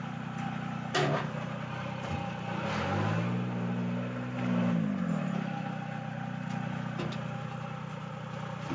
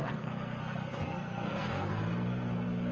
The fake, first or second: second